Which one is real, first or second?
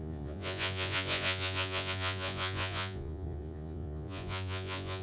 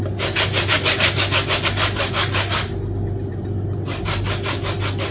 second